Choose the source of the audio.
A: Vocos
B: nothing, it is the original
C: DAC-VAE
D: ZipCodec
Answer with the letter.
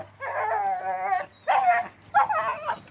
B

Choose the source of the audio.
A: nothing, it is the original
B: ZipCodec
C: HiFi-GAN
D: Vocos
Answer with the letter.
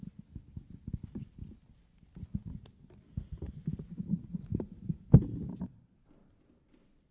A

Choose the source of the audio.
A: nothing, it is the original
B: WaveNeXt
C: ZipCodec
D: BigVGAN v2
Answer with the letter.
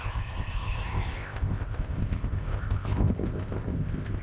C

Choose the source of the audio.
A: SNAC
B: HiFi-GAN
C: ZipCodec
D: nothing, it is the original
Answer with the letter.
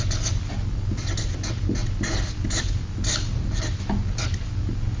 D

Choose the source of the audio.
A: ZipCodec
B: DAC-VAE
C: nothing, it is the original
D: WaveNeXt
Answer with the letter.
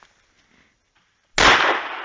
C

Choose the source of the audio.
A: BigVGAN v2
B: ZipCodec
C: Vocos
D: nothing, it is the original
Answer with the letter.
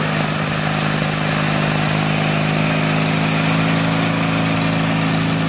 D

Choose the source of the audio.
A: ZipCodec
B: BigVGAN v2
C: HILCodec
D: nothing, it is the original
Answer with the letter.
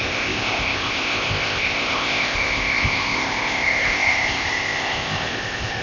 A